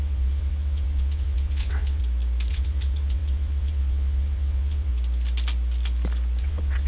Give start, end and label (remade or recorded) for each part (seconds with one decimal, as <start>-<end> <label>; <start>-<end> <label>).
0.0-2.0 remade; 2.0-2.5 recorded; 2.5-4.9 remade; 4.9-6.4 recorded; 6.4-6.9 remade